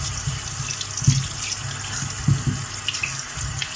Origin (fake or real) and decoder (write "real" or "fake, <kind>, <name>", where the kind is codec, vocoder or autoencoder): real